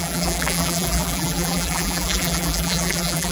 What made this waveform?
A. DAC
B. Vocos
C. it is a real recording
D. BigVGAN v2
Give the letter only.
D